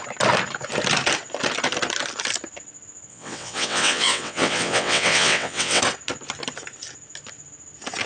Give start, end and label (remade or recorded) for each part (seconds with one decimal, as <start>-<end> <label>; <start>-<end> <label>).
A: 0.0-3.1 recorded; 3.1-5.8 remade; 5.8-8.1 recorded